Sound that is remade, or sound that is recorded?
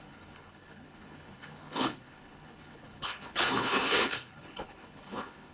remade